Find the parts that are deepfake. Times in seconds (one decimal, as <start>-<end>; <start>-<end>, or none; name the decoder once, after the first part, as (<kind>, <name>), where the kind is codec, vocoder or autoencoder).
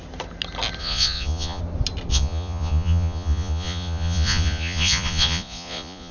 0.8-1.6 (vocoder, Vocos); 2.1-6.1